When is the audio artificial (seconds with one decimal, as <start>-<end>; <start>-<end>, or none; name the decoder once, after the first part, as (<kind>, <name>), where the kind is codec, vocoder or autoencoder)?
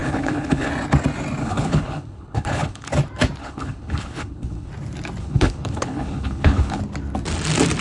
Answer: 0.0-0.7 (codec, HILCodec); 1.4-2.9; 3.4-4.7; 5.2-6.8